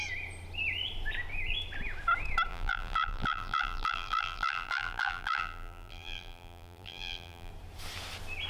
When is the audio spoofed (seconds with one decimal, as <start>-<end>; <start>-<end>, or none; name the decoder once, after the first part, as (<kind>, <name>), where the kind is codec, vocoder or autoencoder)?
2.5-7.5 (vocoder, BigVGAN v2)